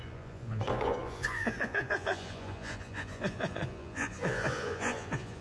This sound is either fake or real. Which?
fake